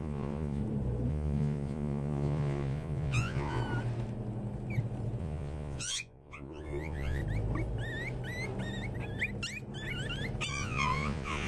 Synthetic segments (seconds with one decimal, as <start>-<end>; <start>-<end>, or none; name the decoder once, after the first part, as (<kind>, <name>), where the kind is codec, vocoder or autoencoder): 0.0-0.6 (vocoder, Vocos); 1.1-3.6; 5.2-7.2; 10.5-11.5